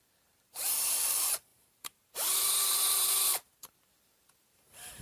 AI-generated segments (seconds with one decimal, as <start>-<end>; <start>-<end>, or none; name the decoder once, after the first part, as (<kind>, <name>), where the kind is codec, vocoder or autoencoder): 0.0-5.0 (vocoder, BigVGAN v2)